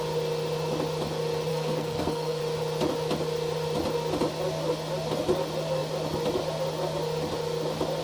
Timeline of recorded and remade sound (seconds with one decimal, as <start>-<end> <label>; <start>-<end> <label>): 0.0-1.5 recorded; 1.5-2.4 remade; 2.4-8.0 recorded

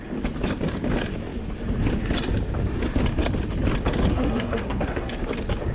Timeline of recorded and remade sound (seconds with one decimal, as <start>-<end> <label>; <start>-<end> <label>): 0.0-4.1 recorded; 4.1-5.1 remade; 5.1-5.7 recorded

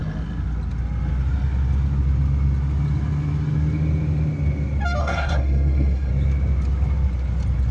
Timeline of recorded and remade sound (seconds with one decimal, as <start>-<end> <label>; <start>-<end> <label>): 0.0-5.0 recorded; 5.0-6.1 remade; 6.1-7.7 recorded

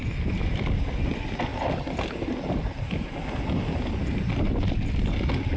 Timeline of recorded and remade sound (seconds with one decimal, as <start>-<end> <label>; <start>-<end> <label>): 0.0-5.6 recorded